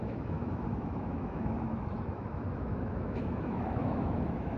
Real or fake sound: fake